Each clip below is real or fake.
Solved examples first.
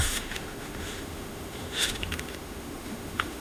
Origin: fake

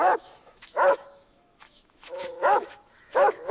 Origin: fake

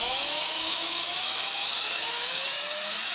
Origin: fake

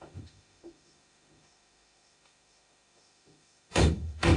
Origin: fake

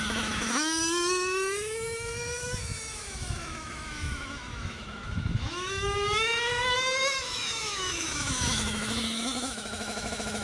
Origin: fake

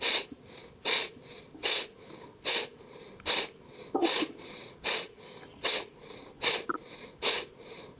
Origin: real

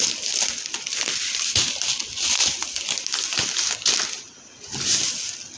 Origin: real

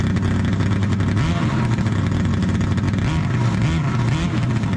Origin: real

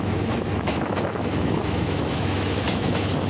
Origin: fake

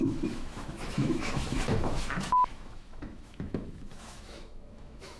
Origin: fake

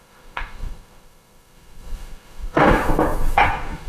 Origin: fake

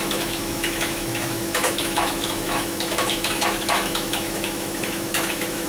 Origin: fake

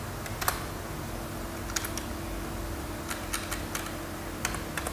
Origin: real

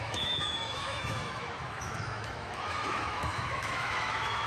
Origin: fake